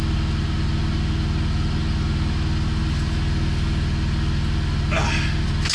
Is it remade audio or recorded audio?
recorded